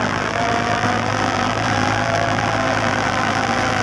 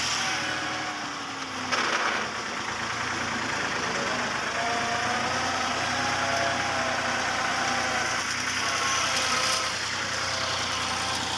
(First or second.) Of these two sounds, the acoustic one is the second